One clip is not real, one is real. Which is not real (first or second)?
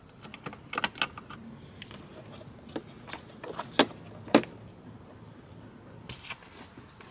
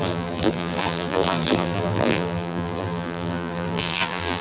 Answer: second